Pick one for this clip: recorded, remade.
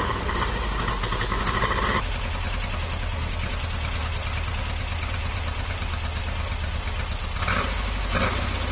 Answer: recorded